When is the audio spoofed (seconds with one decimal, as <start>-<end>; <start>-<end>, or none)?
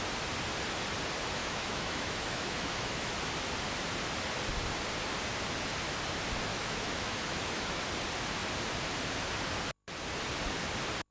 1.4-3.1; 6.5-7.8